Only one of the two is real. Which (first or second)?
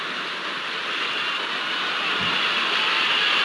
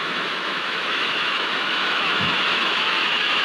first